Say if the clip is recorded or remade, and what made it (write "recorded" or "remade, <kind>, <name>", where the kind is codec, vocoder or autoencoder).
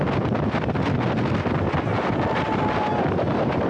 recorded